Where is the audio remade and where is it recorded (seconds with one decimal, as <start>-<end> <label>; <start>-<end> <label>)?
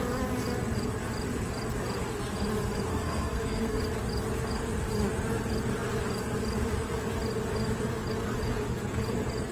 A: 0.0-2.9 recorded; 2.9-3.8 remade; 3.8-9.5 recorded